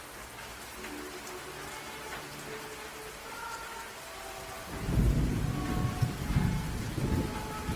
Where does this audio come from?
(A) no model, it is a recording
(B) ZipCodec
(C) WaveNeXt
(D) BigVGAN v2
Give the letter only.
A